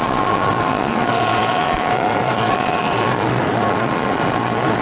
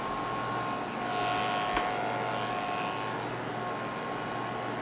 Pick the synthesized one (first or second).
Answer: first